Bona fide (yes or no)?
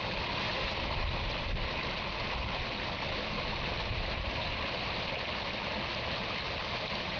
yes